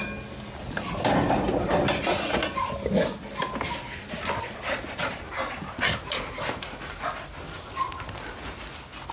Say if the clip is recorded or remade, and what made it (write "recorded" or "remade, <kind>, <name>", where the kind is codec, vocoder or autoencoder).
recorded